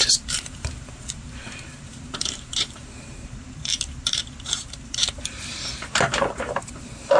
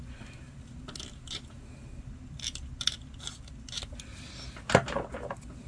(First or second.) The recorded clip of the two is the second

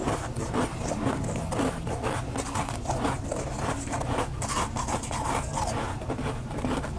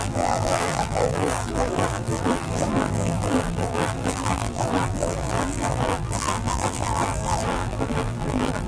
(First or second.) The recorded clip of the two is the first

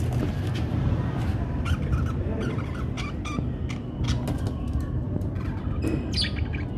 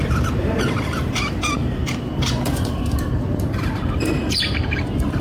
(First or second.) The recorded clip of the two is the first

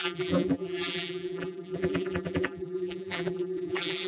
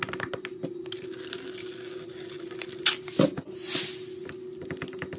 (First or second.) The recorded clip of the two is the second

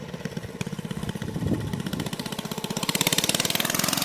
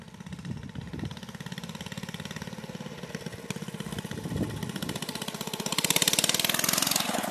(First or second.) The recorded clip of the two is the second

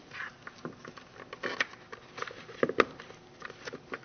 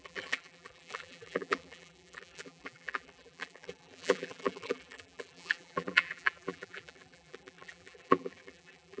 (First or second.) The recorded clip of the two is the first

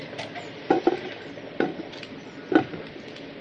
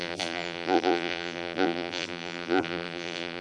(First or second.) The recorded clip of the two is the first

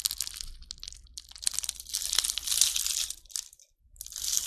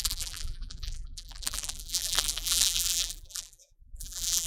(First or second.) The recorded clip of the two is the first